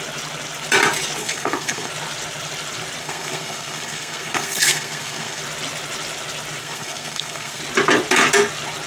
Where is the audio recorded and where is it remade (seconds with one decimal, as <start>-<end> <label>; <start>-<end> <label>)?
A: 0.0-1.2 recorded; 1.2-1.9 remade; 1.9-3.0 recorded; 3.0-5.4 remade; 5.4-6.6 recorded; 6.6-7.6 remade; 7.6-8.9 recorded